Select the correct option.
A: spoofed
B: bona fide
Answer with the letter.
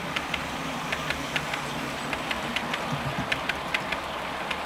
B